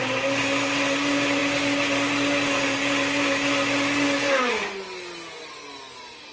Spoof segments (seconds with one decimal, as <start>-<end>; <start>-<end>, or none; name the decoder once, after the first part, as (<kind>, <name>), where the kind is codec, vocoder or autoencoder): none